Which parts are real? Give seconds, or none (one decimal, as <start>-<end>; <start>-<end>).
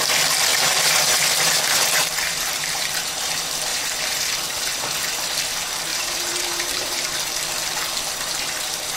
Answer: 0.0-0.5; 3.3-3.7; 4.8-5.9; 7.0-9.0